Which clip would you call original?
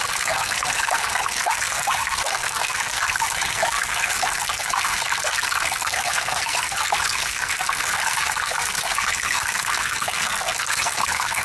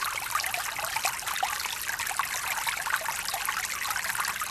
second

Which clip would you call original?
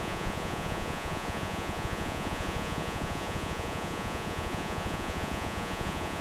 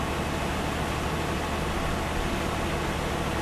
second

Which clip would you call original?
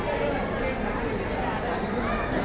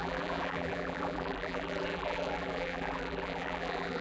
first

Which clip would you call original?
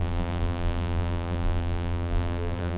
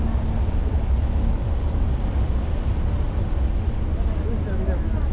second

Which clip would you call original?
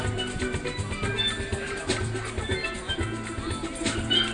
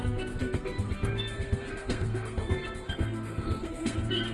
first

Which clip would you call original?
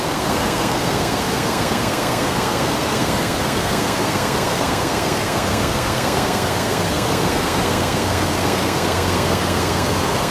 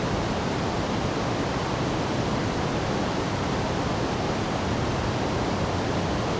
second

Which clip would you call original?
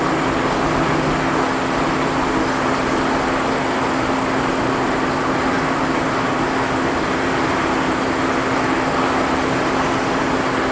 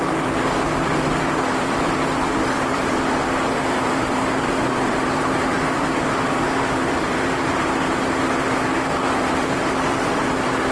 first